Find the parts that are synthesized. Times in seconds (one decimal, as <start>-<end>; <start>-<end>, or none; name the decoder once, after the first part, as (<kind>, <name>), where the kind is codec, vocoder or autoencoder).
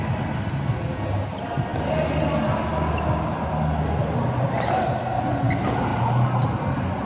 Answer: 5.9-6.5 (vocoder, BigVGAN v2)